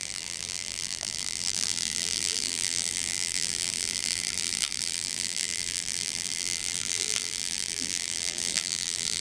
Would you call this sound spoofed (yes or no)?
yes